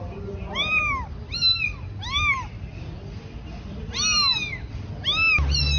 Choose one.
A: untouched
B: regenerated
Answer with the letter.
A